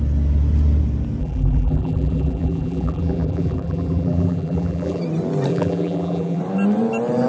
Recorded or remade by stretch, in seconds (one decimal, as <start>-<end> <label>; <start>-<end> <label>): 0.0-1.2 recorded; 1.2-5.0 remade; 5.0-5.5 recorded; 5.5-6.4 remade; 6.4-7.3 recorded